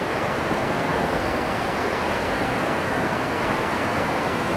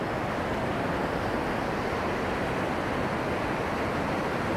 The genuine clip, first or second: second